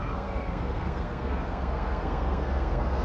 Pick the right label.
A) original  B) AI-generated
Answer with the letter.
B